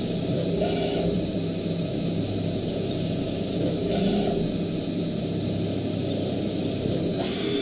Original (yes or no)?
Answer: yes